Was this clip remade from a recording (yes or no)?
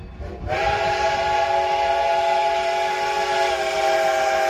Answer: no